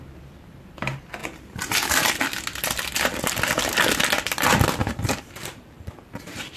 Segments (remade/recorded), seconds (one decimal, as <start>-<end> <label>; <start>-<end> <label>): 0.0-1.2 recorded; 1.2-2.4 remade; 2.4-4.8 recorded; 4.8-6.6 remade